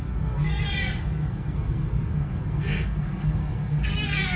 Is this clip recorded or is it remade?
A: remade